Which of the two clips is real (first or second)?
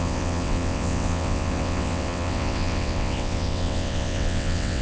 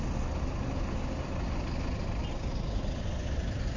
second